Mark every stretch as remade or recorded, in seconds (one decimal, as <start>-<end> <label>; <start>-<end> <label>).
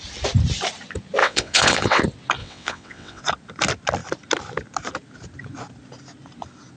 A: 0.0-1.2 recorded; 1.2-2.0 remade; 2.0-2.4 recorded; 2.4-3.2 remade; 3.2-6.8 recorded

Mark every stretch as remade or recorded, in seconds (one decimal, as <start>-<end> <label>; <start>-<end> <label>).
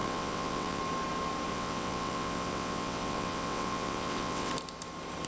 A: 0.0-0.8 remade; 0.8-1.5 recorded; 1.5-4.5 remade; 4.5-5.3 recorded